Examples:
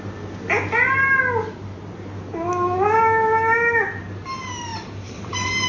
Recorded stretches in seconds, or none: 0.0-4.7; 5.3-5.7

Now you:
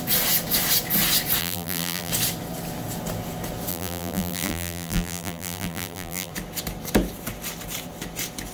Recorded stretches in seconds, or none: 0.0-1.4; 2.1-3.7; 6.3-8.5

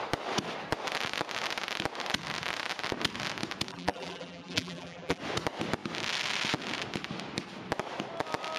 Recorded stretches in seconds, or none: 0.0-3.7; 5.2-8.6

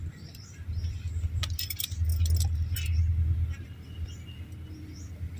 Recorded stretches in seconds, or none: 0.0-5.4